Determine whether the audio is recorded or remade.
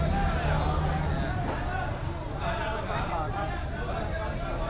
recorded